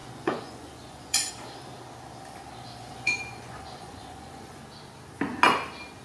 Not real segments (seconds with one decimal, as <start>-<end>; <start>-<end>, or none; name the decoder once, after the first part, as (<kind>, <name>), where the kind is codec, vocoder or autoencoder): 0.0-1.3 (vocoder, Vocos); 2.8-4.6